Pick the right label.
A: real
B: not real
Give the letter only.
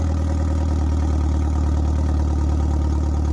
A